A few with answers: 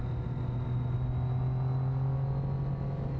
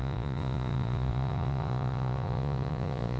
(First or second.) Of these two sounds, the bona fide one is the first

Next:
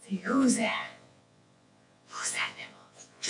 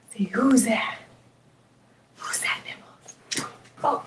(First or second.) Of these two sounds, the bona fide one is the second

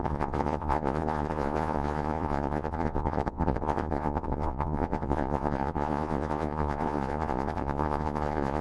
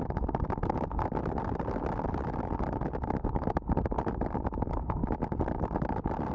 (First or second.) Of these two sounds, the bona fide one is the second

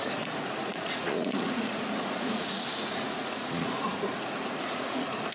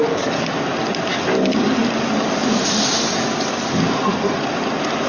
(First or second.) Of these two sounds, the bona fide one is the second